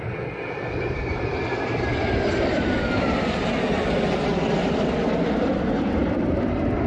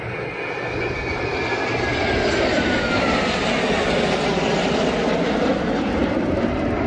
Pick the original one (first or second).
second